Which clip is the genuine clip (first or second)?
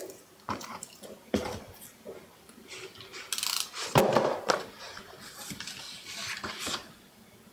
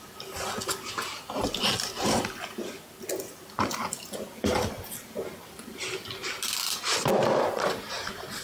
second